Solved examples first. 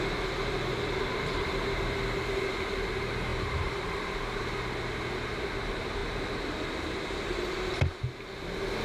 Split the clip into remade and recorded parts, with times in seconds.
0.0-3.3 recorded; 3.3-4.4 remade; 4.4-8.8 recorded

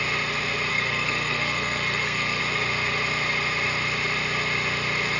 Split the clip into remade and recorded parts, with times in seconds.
0.0-0.7 recorded; 0.7-2.4 remade; 2.4-5.2 recorded

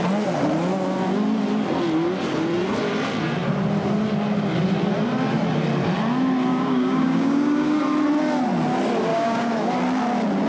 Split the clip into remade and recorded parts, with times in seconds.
0.0-6.5 recorded; 6.5-7.8 remade; 7.8-9.1 recorded; 9.1-9.7 remade; 9.7-10.5 recorded